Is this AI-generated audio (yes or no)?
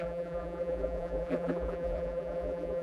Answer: yes